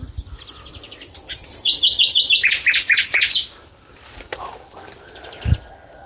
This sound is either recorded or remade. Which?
recorded